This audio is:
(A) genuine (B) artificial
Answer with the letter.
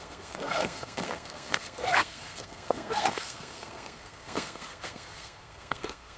B